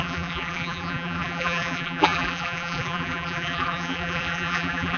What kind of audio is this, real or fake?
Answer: fake